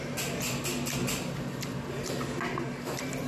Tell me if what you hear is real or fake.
real